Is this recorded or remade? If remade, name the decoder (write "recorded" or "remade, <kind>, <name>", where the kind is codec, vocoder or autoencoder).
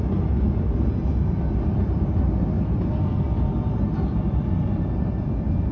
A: recorded